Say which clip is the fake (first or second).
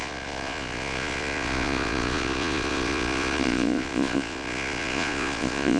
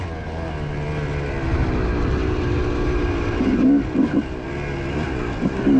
first